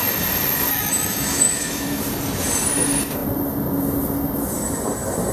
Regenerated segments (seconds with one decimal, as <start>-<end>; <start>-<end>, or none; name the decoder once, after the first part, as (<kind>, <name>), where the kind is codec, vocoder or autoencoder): 0.7-2.0 (autoencoder, DAC-VAE)